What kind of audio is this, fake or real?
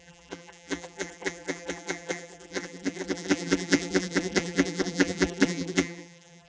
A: fake